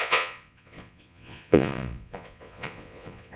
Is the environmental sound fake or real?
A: fake